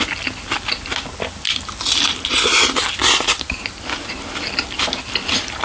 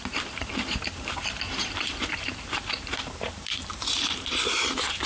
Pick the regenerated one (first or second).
second